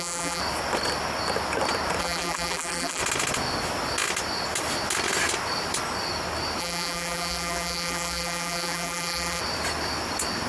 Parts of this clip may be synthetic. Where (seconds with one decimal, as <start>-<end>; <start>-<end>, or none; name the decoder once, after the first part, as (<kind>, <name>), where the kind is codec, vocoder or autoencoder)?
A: 0.0-0.4 (vocoder, BigVGAN v2); 2.0-3.0; 6.6-9.4